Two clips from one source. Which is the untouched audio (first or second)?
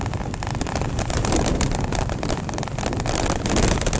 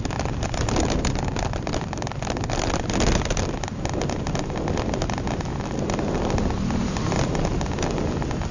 second